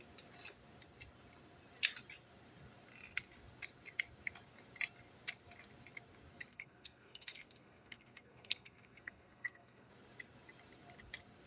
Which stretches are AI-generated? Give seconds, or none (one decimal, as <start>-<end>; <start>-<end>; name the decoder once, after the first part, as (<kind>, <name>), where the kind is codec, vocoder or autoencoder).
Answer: 6.5-9.9 (codec, SNAC)